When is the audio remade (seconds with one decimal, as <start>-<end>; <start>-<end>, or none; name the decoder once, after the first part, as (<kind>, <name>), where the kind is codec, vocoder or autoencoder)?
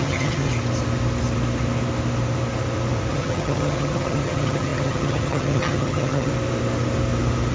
0.0-0.5 (vocoder, HiFi-GAN); 3.1-6.3